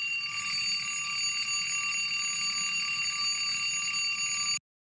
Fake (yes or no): no